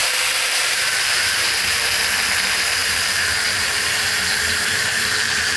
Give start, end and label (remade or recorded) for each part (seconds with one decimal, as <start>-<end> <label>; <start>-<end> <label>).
0.0-1.9 remade; 1.9-2.8 recorded; 2.8-5.6 remade

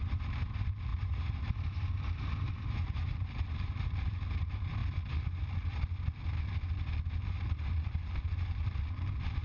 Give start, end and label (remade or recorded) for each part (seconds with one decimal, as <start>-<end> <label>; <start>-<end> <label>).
0.0-4.8 remade; 4.8-7.1 recorded; 7.1-9.4 remade